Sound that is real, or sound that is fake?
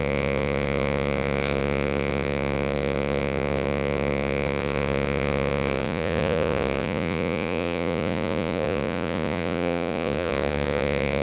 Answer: fake